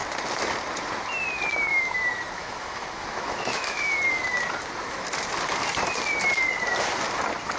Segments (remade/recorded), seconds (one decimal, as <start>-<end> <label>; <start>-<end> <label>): 0.0-2.4 recorded; 2.4-4.0 remade; 4.0-7.6 recorded